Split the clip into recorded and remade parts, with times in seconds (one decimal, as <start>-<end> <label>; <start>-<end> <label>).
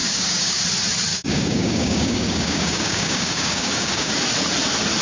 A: 0.0-0.6 remade; 0.6-1.1 recorded; 1.1-4.1 remade; 4.1-5.0 recorded